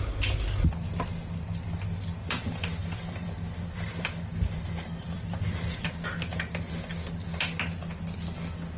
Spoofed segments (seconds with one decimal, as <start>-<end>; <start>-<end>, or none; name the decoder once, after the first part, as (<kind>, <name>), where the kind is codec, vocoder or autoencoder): 2.2-5.9 (vocoder, BigVGAN v2)